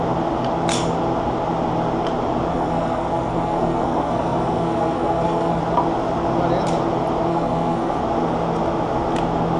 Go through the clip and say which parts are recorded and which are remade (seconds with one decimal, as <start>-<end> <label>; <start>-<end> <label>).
0.0-2.5 recorded; 2.5-5.6 remade; 5.6-7.3 recorded; 7.3-8.0 remade; 8.0-9.6 recorded